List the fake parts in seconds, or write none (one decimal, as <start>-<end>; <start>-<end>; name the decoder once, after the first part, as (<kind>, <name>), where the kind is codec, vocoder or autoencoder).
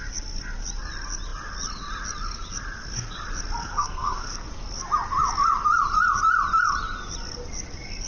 3.6-4.5 (codec, SNAC)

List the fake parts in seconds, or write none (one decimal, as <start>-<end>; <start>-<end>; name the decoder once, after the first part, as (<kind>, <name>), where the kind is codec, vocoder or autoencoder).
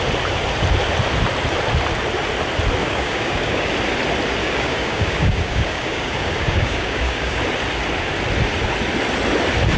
2.8-3.7 (codec, DAC); 4.4-7.4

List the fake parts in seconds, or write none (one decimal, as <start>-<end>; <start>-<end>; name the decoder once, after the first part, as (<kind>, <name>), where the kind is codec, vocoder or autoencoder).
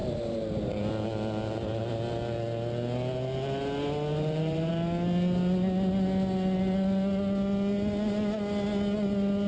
0.0-0.7 (vocoder, BigVGAN v2); 4.1-4.7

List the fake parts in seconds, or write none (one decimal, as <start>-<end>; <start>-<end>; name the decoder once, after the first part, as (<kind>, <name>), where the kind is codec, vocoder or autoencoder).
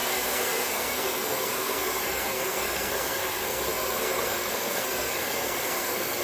0.0-6.2 (codec, SNAC)